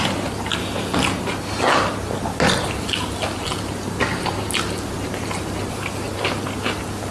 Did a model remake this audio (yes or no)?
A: no